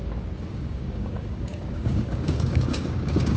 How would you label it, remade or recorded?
remade